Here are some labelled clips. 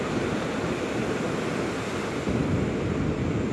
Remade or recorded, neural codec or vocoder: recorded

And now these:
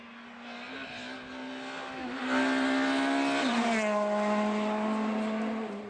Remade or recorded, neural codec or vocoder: recorded